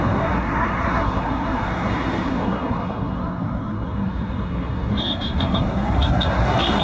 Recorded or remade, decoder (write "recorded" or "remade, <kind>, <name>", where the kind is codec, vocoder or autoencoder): remade, codec, SNAC